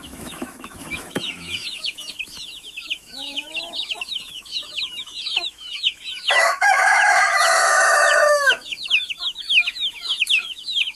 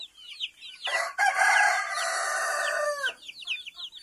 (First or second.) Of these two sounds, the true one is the second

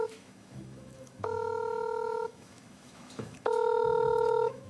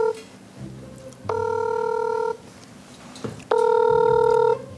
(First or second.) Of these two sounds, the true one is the second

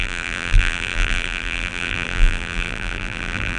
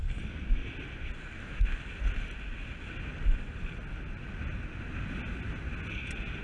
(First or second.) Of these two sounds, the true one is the second